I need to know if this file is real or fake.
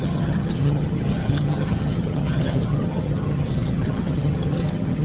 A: fake